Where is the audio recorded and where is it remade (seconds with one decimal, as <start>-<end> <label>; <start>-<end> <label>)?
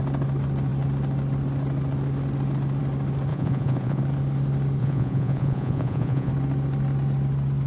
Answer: 0.0-3.3 recorded; 3.3-4.0 remade; 4.0-4.8 recorded; 4.8-6.3 remade; 6.3-7.7 recorded